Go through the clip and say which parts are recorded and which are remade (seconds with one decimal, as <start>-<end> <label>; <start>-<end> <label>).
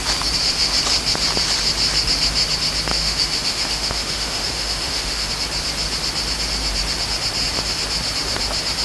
0.0-2.9 recorded; 2.9-5.3 remade; 5.3-8.8 recorded